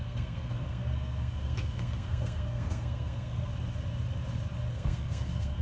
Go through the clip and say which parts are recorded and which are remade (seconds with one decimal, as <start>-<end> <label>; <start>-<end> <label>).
0.0-3.5 remade; 3.5-4.7 recorded; 4.7-5.6 remade